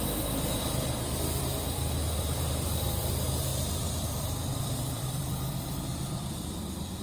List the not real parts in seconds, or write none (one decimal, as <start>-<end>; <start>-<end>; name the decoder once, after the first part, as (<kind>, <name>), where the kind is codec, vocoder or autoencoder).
0.0-7.0 (vocoder, BigVGAN v2)